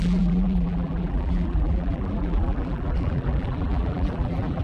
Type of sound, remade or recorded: remade